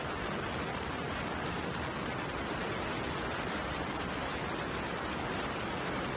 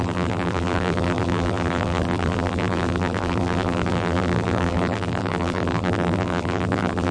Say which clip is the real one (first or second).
first